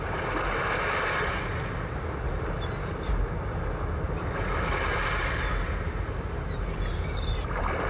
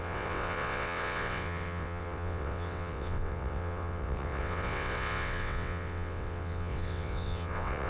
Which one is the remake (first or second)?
second